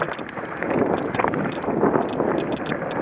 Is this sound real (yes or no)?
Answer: no